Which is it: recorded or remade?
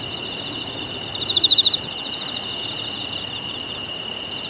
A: recorded